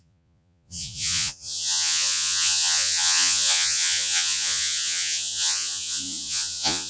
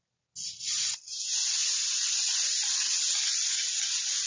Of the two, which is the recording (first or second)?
second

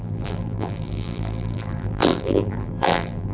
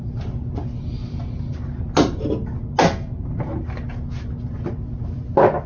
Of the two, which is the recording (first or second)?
second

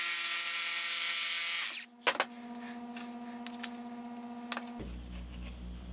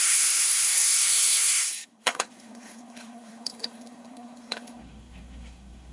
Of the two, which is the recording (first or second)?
first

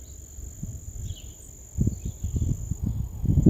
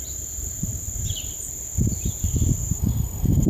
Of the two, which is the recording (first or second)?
first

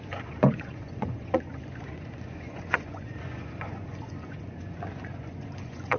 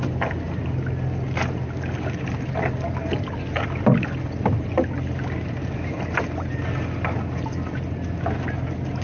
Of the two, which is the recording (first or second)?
second